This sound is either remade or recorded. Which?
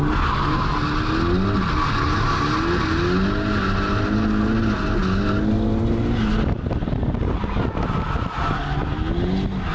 recorded